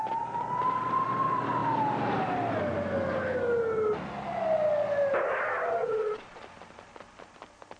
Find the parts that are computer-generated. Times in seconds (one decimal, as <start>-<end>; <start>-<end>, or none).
5.8-6.4